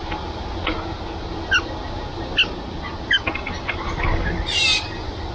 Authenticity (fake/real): real